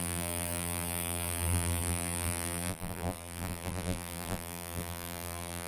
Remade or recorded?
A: remade